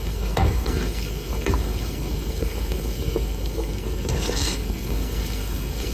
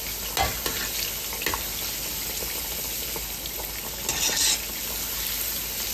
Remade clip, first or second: first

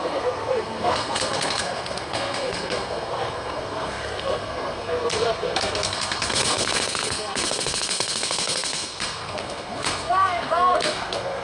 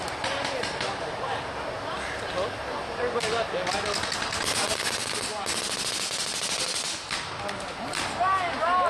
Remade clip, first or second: first